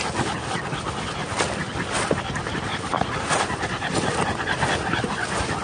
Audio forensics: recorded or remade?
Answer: recorded